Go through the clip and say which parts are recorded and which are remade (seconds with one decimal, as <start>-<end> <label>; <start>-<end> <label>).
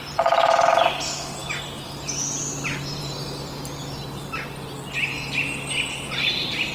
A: 0.0-6.7 recorded